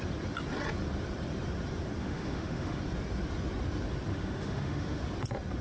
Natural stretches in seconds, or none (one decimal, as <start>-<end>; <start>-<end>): 0.0-2.0; 2.8-4.1; 5.0-5.6

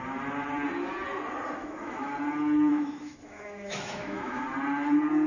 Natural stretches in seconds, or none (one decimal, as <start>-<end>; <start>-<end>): 0.0-1.6; 2.1-2.7; 4.4-5.3

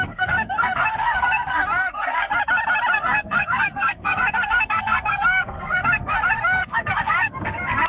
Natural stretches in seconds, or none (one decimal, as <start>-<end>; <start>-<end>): 2.3-2.9

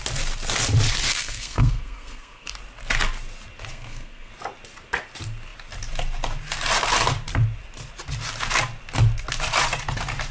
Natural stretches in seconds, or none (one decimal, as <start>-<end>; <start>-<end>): 0.0-1.1; 2.5-3.7; 4.3-10.3